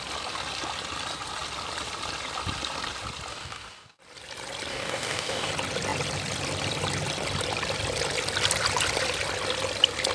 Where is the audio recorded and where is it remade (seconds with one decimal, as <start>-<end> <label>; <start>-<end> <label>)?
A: 0.0-3.3 recorded; 3.3-4.0 remade; 4.0-4.7 recorded; 4.7-5.5 remade; 5.5-10.1 recorded